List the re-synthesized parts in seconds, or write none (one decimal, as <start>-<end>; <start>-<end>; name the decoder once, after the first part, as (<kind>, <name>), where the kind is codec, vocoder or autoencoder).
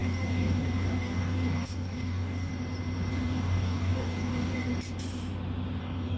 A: 0.0-2.5 (codec, DAC); 3.1-4.7; 5.8-6.2